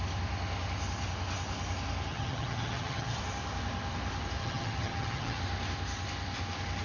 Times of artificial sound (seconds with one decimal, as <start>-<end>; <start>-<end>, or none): 2.1-3.2; 4.4-5.4